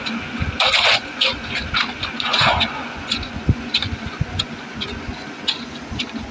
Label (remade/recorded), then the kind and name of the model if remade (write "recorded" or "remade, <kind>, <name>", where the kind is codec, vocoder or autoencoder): remade, vocoder, Vocos